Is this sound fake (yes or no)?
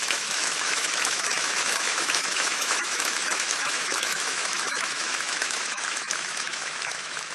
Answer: yes